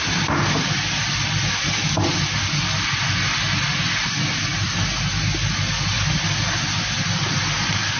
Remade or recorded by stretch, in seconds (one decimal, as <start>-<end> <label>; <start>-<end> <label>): 0.0-8.0 recorded